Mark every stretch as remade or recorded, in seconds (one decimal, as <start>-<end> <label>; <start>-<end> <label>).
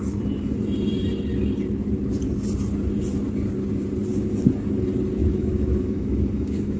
0.0-5.2 recorded; 5.2-6.8 remade